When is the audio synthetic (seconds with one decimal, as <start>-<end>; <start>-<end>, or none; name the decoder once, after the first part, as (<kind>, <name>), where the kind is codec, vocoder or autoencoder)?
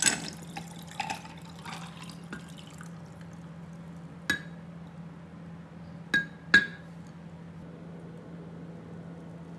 none